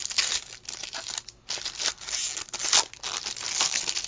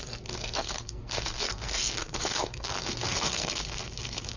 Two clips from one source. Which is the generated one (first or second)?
second